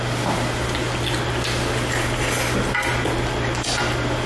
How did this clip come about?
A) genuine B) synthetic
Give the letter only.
A